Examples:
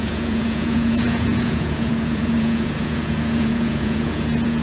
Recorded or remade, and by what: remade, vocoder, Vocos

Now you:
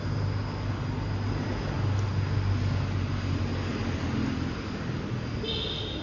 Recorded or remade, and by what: recorded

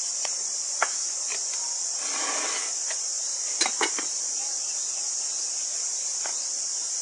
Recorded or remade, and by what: recorded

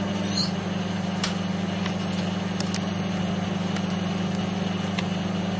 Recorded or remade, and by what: recorded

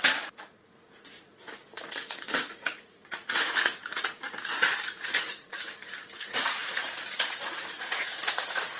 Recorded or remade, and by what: remade, vocoder, Vocos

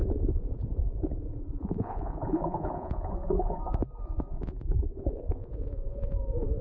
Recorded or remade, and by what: remade, vocoder, Vocos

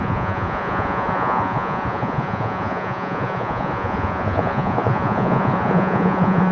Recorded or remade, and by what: remade, vocoder, Vocos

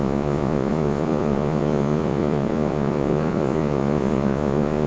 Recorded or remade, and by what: remade, vocoder, Vocos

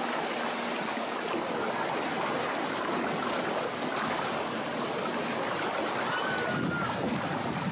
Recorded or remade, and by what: recorded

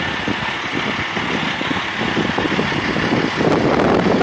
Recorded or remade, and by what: recorded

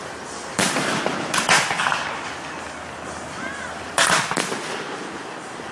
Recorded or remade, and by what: recorded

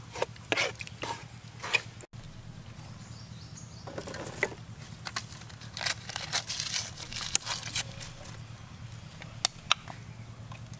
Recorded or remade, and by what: recorded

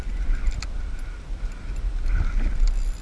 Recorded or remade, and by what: recorded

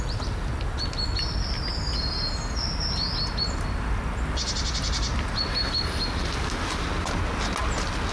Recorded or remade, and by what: recorded